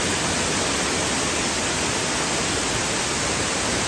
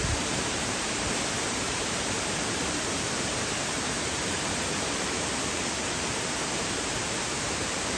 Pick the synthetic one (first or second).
second